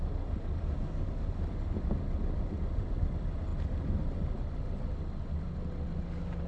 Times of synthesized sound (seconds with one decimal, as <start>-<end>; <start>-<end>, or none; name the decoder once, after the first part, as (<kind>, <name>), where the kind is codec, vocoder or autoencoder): none